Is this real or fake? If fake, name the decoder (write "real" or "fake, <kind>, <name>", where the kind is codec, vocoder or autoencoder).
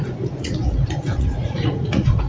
fake, vocoder, Vocos